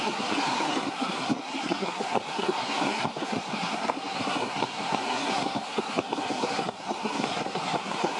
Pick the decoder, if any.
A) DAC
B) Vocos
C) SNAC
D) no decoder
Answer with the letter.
C